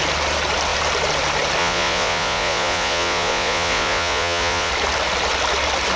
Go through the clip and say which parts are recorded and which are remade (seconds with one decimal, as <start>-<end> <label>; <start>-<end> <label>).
0.0-1.6 recorded; 1.6-4.7 remade; 4.7-6.0 recorded